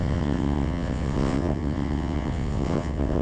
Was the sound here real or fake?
fake